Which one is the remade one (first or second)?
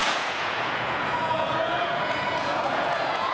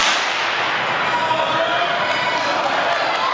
first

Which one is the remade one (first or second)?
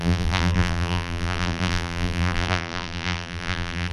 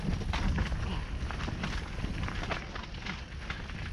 first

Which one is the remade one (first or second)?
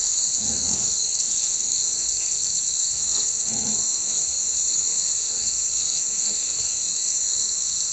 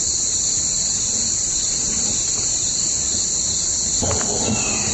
first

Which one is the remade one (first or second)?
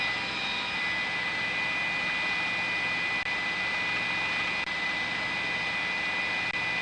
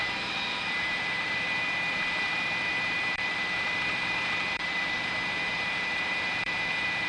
second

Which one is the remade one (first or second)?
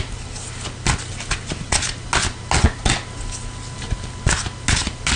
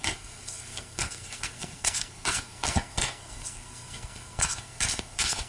second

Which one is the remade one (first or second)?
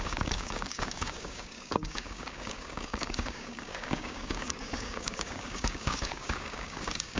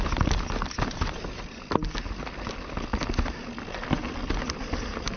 first